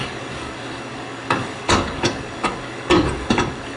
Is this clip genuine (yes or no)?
no